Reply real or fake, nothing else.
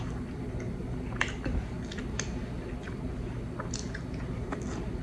real